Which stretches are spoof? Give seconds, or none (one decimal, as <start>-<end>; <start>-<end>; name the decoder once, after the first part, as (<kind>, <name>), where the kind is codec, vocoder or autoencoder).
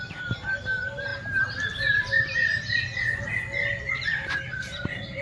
none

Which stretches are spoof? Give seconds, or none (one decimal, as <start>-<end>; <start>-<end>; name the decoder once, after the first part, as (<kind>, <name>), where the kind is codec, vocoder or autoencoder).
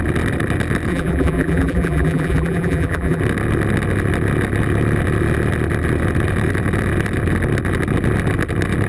0.9-3.2 (vocoder, BigVGAN v2)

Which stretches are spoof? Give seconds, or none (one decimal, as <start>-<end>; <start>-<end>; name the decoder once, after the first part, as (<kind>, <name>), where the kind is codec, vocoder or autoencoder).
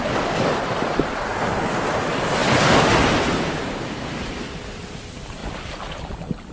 0.0-1.3 (vocoder, BigVGAN v2); 2.0-2.4; 3.6-5.4; 6.0-6.5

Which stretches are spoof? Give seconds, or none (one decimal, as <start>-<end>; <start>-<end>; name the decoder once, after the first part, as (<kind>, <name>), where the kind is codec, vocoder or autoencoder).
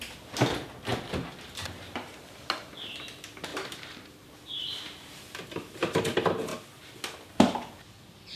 3.5-5.2 (vocoder, BigVGAN v2)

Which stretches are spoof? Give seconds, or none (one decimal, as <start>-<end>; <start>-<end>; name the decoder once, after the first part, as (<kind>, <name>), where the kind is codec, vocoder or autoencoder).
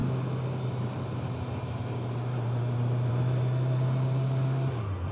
none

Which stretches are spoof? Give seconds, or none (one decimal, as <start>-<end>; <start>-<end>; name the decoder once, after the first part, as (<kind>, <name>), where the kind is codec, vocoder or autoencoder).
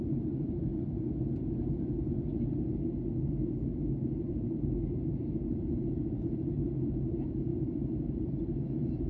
0.0-0.7 (vocoder, BigVGAN v2); 4.3-7.5; 8.1-9.1